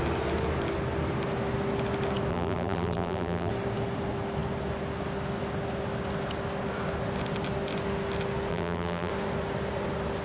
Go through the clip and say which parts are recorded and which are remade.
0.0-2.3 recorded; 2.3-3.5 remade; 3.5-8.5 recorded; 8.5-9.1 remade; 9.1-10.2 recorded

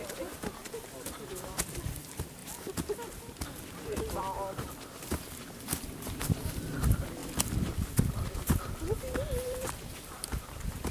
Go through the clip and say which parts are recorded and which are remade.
0.0-2.4 remade; 2.4-5.8 recorded; 5.8-7.2 remade; 7.2-8.4 recorded; 8.4-10.9 remade

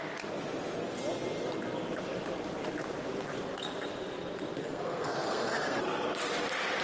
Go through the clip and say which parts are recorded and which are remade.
0.0-4.6 recorded; 4.6-5.8 remade; 5.8-6.8 recorded

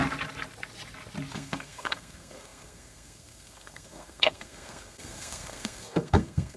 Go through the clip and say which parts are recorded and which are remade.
0.0-1.3 recorded; 1.3-6.6 remade

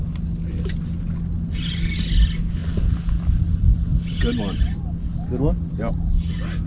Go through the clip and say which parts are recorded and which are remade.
0.0-6.7 recorded

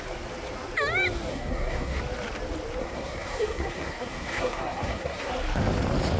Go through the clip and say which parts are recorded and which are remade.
0.0-1.3 recorded; 1.3-2.0 remade; 2.0-2.8 recorded; 2.8-5.3 remade; 5.3-6.2 recorded